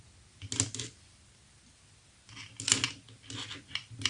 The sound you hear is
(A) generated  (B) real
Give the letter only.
B